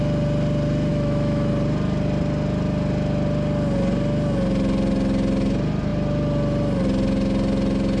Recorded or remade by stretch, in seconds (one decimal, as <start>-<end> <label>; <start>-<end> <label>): 0.0-0.9 recorded; 0.9-1.5 remade; 1.5-8.0 recorded